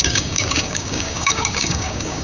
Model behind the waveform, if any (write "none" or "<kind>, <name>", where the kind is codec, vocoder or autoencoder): codec, DAC